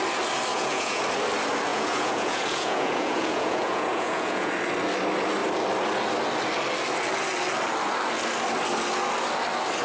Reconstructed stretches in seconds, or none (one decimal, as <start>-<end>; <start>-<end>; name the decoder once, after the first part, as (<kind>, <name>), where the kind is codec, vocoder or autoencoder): 0.5-1.0 (vocoder, Vocos); 1.7-4.5